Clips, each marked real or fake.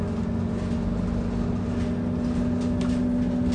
real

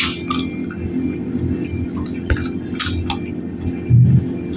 real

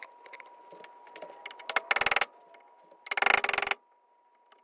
real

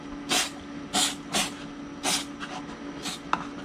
real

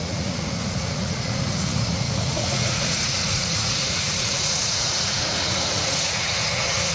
fake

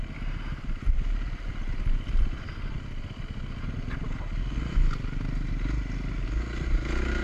real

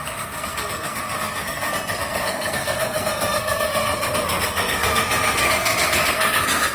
fake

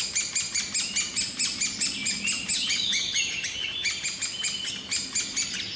real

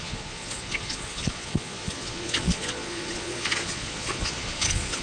fake